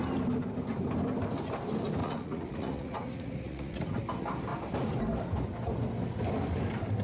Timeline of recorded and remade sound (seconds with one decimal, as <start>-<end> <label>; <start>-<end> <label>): 0.0-2.0 recorded; 2.0-4.0 remade; 4.0-7.0 recorded